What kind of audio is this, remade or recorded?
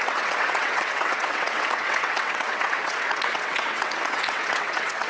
remade